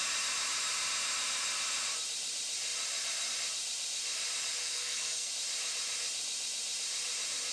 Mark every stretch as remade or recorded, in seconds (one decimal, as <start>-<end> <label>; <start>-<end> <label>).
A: 0.0-4.6 recorded; 4.6-5.3 remade; 5.3-7.5 recorded